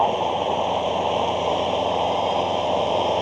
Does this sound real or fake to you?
fake